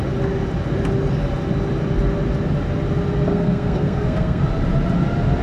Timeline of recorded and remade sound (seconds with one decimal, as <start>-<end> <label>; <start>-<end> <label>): 0.0-3.3 recorded; 3.3-4.4 remade; 4.4-5.4 recorded